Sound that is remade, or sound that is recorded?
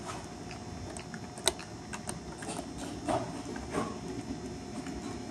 recorded